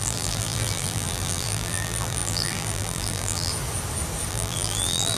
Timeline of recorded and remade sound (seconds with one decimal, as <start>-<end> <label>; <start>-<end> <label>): 0.0-3.5 remade; 3.5-4.3 recorded; 4.3-5.2 remade